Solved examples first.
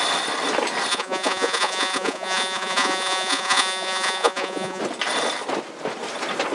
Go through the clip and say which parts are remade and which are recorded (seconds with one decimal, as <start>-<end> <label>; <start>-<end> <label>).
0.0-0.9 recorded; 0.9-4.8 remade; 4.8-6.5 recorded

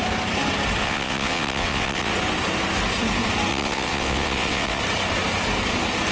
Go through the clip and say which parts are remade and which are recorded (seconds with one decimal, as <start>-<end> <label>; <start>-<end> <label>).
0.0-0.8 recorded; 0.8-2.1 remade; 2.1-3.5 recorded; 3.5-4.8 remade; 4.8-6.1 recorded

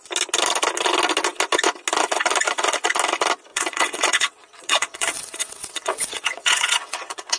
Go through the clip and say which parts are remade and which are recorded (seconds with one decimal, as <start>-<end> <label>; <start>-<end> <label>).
0.0-3.5 recorded; 3.5-7.4 remade

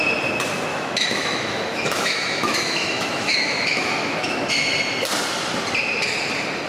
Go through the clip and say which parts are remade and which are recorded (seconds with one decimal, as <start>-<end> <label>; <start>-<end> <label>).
0.0-0.7 recorded; 0.7-4.5 remade; 4.5-6.7 recorded

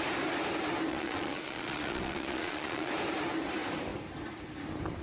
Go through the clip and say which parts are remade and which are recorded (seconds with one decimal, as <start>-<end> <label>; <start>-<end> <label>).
0.0-0.9 recorded; 0.9-2.9 remade; 2.9-5.0 recorded

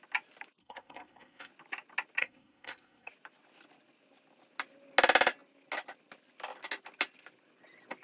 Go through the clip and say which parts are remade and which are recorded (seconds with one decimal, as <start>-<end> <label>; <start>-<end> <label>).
0.0-0.6 recorded; 0.6-1.5 remade; 1.5-2.2 recorded; 2.2-3.1 remade; 3.1-8.0 recorded